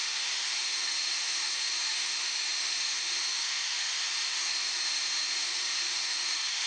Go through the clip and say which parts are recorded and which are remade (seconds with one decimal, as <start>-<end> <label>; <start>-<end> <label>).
0.0-6.7 remade